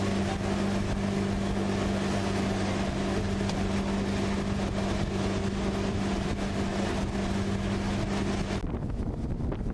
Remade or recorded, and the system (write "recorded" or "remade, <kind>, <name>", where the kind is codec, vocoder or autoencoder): recorded